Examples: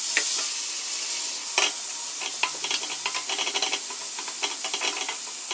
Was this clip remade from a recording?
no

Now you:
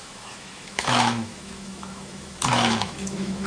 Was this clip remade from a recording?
yes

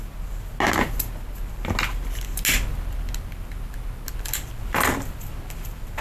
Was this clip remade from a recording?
no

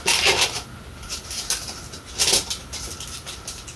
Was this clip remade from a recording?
no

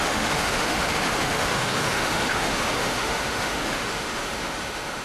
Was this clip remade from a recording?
yes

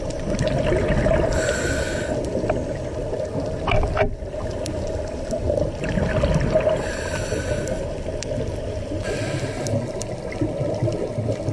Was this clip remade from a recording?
no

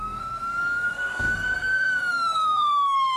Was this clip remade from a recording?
yes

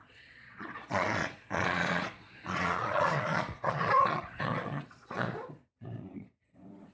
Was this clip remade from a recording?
yes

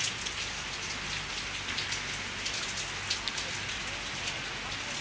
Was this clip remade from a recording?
no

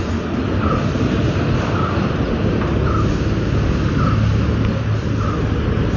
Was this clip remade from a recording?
no